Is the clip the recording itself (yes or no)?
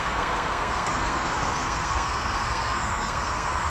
no